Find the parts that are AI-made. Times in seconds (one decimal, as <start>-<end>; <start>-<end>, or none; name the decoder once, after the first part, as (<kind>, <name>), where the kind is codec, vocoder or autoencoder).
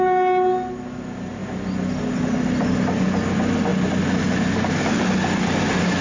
none